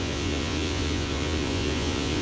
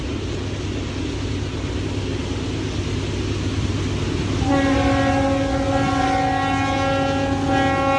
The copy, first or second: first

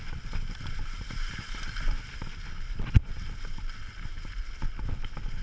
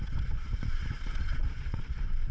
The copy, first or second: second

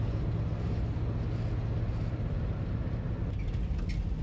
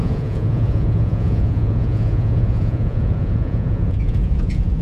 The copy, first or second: second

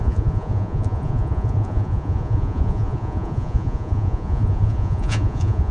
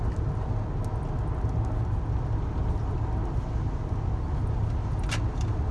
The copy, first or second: first